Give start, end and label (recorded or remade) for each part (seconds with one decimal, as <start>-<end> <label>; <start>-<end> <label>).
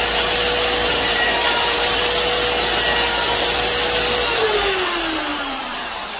0.0-0.9 recorded; 0.9-2.0 remade; 2.0-5.3 recorded; 5.3-6.2 remade